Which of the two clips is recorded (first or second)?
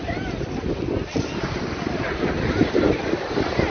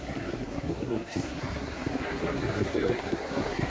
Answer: first